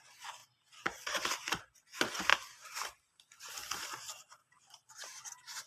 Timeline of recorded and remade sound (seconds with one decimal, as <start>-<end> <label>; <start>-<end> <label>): 0.0-2.3 recorded; 2.3-3.5 remade; 3.5-4.4 recorded; 4.4-5.2 remade; 5.2-5.7 recorded